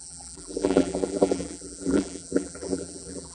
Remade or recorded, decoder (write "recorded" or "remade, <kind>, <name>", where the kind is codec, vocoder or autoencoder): remade, vocoder, BigVGAN v2